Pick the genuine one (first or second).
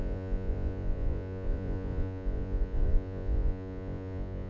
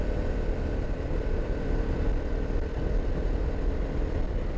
second